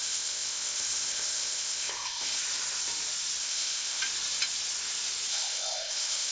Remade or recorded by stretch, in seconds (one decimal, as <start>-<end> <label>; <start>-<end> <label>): 0.0-2.4 remade; 2.4-3.4 recorded; 3.4-4.0 remade; 4.0-5.3 recorded; 5.3-6.3 remade